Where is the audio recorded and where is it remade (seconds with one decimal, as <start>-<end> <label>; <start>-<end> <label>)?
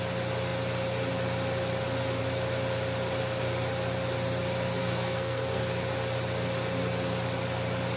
0.0-4.8 recorded; 4.8-5.6 remade; 5.6-8.0 recorded